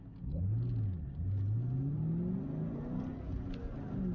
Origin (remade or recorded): recorded